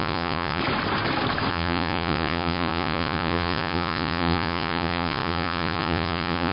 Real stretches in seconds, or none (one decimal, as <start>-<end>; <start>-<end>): 0.6-1.5